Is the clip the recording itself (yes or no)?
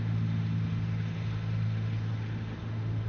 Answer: no